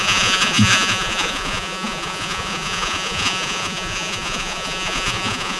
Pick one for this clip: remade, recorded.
remade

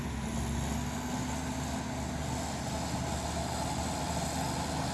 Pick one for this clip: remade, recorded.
recorded